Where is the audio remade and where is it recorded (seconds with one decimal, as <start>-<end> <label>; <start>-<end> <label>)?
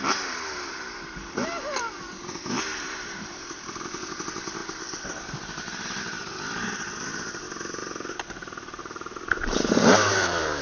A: 0.0-7.8 remade; 7.8-8.8 recorded; 8.8-10.6 remade